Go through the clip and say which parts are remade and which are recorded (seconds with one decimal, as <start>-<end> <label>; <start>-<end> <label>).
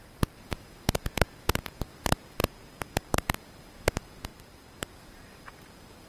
0.0-2.4 remade; 2.4-3.1 recorded; 3.1-6.1 remade